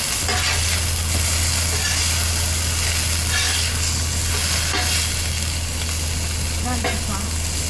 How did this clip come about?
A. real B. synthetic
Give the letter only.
A